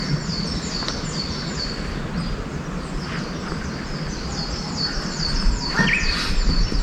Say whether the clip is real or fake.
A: real